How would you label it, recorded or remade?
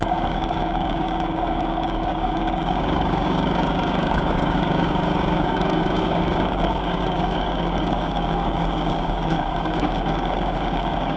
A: remade